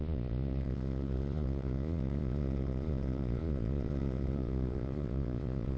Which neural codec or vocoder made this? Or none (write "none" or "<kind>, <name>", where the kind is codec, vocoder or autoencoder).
vocoder, Vocos